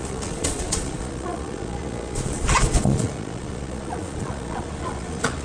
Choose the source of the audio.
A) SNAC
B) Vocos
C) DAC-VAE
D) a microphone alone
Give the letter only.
B